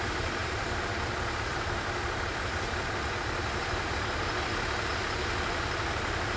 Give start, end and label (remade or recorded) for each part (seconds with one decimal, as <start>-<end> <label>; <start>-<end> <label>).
0.0-6.4 recorded